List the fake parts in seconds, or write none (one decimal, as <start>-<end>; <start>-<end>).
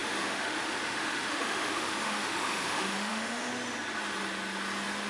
0.0-3.5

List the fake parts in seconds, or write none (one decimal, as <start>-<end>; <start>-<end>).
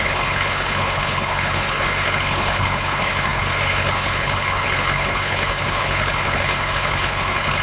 0.0-7.6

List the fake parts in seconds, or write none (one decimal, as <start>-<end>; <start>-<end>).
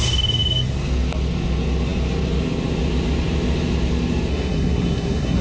4.3-5.4